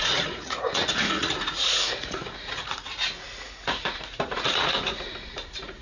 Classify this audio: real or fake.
fake